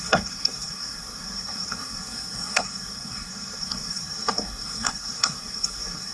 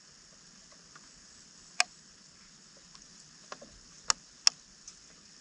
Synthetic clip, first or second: first